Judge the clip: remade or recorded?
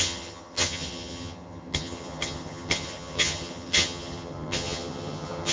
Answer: remade